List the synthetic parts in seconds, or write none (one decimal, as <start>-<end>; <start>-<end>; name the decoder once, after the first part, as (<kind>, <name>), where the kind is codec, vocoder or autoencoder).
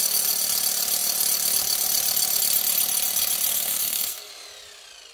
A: 3.5-4.3 (codec, SNAC)